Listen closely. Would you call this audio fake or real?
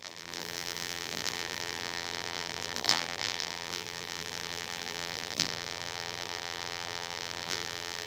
fake